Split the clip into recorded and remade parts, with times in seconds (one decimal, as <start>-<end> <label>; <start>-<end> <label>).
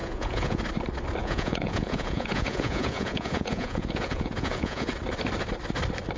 0.0-0.6 remade; 0.6-1.2 recorded; 1.2-4.9 remade; 4.9-6.2 recorded